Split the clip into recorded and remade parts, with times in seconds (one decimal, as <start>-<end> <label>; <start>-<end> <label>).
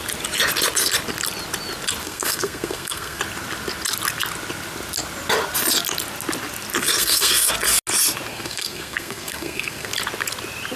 0.0-2.0 recorded; 2.0-3.2 remade; 3.2-6.8 recorded; 6.8-7.5 remade; 7.5-8.3 recorded; 8.3-9.9 remade; 9.9-10.8 recorded